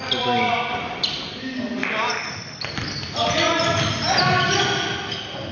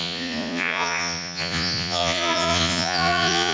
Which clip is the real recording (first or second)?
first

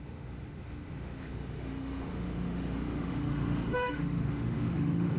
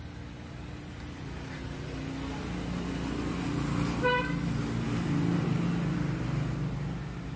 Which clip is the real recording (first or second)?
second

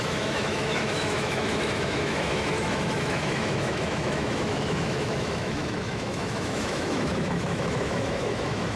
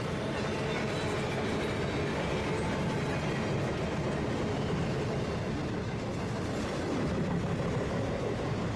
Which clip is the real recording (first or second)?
second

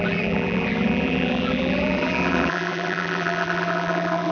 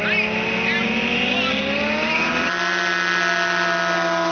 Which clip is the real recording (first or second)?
second